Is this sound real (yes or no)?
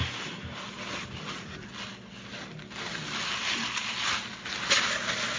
yes